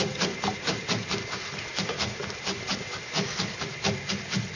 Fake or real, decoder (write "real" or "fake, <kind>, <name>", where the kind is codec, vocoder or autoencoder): real